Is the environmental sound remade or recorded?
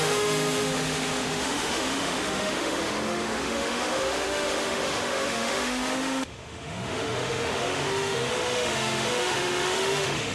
remade